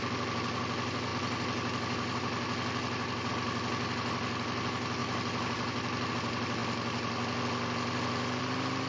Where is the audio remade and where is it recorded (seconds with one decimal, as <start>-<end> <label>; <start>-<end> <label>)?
0.0-1.1 recorded; 1.1-3.3 remade; 3.3-5.0 recorded; 5.0-6.1 remade; 6.1-8.9 recorded